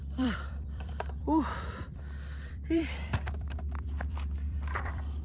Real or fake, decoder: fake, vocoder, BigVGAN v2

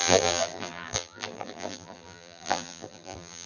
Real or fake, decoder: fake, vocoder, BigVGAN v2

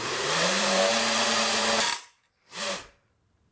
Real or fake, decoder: fake, vocoder, BigVGAN v2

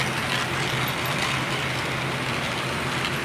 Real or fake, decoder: real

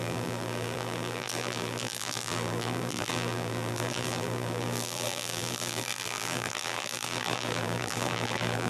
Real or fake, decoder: fake, vocoder, BigVGAN v2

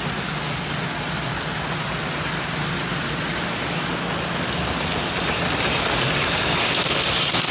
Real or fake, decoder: real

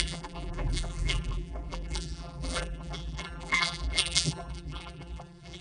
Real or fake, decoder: fake, vocoder, BigVGAN v2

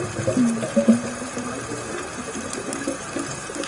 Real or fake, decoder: fake, vocoder, BigVGAN v2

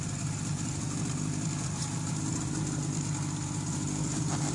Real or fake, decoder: real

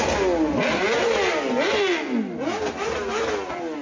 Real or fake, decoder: real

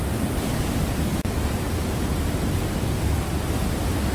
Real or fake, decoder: real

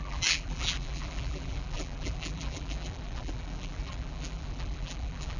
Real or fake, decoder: fake, vocoder, BigVGAN v2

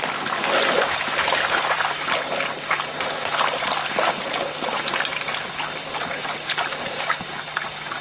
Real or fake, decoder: real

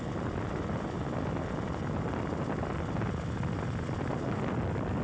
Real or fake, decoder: real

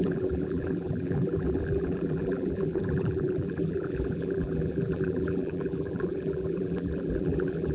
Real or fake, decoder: fake, vocoder, BigVGAN v2